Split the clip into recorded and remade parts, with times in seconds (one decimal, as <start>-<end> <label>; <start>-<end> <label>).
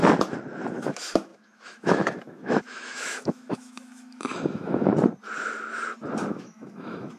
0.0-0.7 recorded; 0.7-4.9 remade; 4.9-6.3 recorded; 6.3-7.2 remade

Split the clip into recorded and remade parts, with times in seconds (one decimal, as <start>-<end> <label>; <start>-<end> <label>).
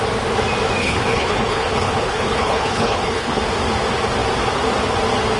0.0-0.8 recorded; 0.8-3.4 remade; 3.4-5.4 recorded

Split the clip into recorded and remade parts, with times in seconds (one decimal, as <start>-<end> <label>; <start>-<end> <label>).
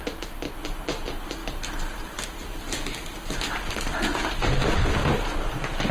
0.0-5.9 recorded